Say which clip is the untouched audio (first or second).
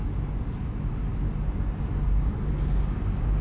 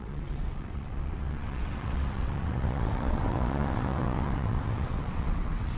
first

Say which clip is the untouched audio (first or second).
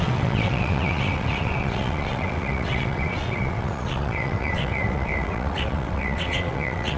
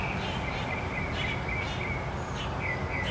second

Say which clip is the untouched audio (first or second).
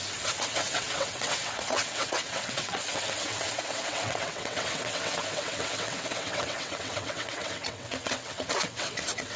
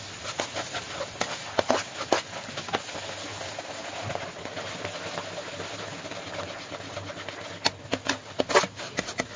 second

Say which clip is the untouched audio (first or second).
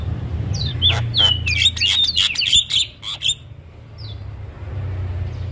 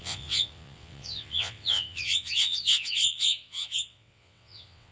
first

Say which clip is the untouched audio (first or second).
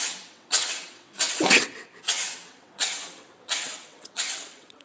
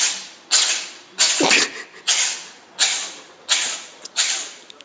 second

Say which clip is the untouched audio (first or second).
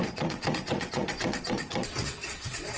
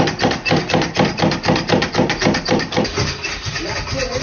second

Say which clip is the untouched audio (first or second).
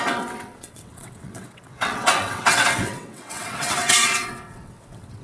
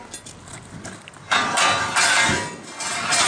second